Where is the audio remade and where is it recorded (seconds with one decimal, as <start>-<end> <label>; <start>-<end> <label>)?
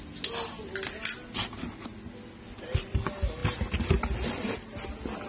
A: 0.0-5.3 recorded